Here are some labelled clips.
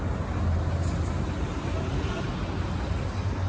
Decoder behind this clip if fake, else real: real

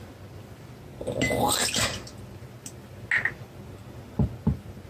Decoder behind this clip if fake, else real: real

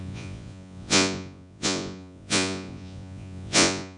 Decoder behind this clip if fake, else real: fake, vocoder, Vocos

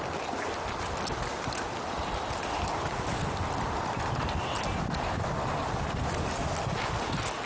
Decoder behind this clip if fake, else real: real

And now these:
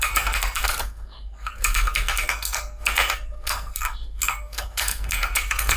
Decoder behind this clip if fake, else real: fake, codec, SNAC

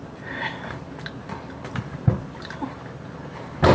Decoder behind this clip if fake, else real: real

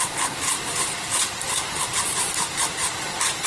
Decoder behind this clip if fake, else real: real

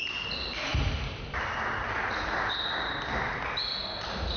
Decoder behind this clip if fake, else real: real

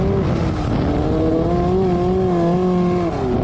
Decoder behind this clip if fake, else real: real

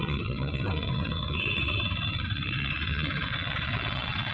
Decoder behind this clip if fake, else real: fake, vocoder, WaveNeXt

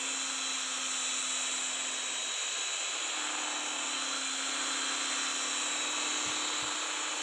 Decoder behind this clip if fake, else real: real